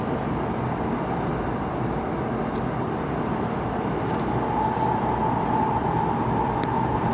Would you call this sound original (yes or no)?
yes